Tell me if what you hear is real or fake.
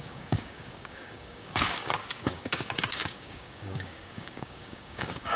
fake